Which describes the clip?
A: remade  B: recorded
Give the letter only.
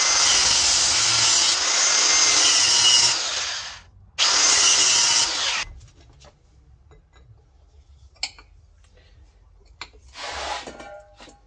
B